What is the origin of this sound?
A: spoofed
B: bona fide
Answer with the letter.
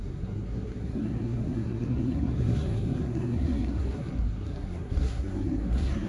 A